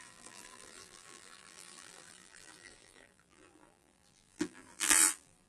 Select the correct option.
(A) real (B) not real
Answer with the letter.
B